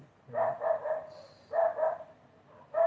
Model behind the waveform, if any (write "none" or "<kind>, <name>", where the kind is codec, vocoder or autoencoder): none